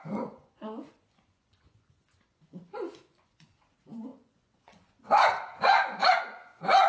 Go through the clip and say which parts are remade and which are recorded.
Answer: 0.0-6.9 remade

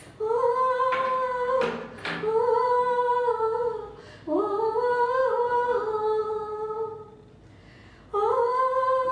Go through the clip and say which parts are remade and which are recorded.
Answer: 0.0-9.1 recorded

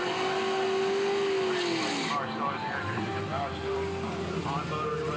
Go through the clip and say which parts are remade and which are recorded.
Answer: 0.0-5.2 recorded

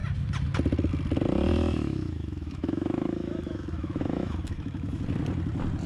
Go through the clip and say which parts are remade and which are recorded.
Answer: 0.0-1.5 recorded; 1.5-5.0 remade; 5.0-5.9 recorded